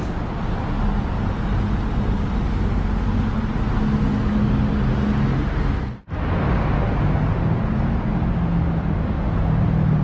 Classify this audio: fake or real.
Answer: real